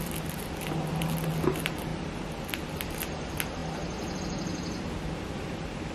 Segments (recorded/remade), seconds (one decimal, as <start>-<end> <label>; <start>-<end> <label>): 0.0-5.9 recorded